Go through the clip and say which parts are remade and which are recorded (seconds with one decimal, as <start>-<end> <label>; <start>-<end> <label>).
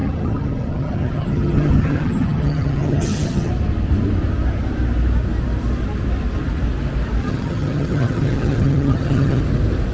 0.0-3.5 remade; 3.5-7.2 recorded; 7.2-9.4 remade; 9.4-9.9 recorded